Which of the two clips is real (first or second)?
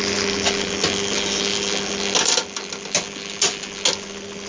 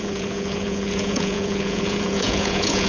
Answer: first